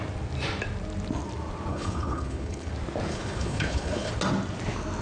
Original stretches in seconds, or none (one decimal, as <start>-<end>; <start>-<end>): 0.0-1.7; 2.7-3.1; 4.1-5.0